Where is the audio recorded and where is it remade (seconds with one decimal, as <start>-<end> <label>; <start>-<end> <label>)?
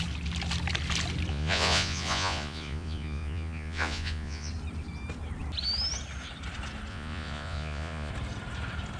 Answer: 0.0-1.3 recorded; 1.3-4.5 remade; 4.5-6.9 recorded; 6.9-8.1 remade; 8.1-9.0 recorded